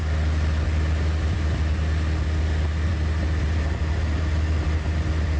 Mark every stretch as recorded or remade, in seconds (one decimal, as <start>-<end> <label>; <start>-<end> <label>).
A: 0.0-5.4 recorded

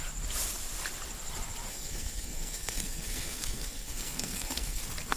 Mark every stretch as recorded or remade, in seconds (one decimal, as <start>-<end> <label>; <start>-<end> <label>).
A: 0.0-1.7 recorded; 1.7-4.8 remade; 4.8-5.2 recorded

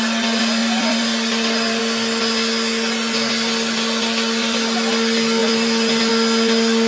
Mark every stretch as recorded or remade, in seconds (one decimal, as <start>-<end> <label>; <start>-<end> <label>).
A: 0.0-0.6 recorded; 0.6-1.8 remade; 1.8-5.4 recorded; 5.4-6.1 remade; 6.1-6.9 recorded

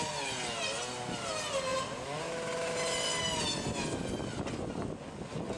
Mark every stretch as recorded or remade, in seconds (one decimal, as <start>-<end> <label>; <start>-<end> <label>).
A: 0.0-5.6 recorded

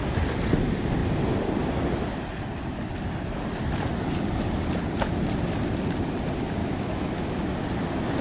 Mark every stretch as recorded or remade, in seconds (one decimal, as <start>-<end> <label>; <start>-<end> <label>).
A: 0.0-6.6 recorded; 6.6-7.4 remade; 7.4-8.2 recorded

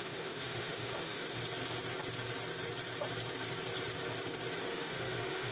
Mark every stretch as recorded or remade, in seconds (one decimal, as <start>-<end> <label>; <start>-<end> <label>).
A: 0.0-1.4 remade; 1.4-4.6 recorded; 4.6-5.5 remade

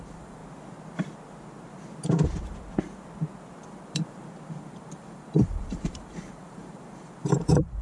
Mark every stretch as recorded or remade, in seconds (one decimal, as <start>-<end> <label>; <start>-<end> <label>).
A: 0.0-0.4 remade; 0.4-4.6 recorded; 4.6-7.8 remade

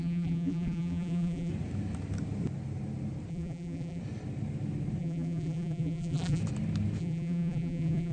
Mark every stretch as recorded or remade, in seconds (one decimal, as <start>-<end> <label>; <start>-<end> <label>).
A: 0.0-1.5 remade; 1.5-3.3 recorded; 3.3-4.0 remade; 4.0-5.0 recorded; 5.0-6.4 remade; 6.4-7.0 recorded; 7.0-8.1 remade